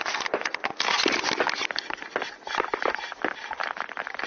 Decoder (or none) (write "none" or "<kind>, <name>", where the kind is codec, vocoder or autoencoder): none